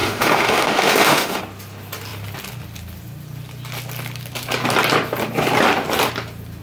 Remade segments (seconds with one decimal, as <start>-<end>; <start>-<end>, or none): 0.0-1.4